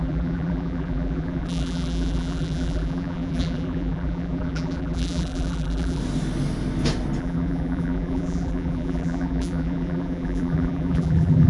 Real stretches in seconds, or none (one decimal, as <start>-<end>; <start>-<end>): 6.0-7.2